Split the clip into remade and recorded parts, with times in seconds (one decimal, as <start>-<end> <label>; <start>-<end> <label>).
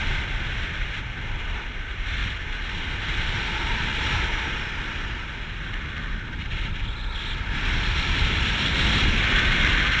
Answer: 0.0-2.2 remade; 2.2-3.2 recorded; 3.2-10.0 remade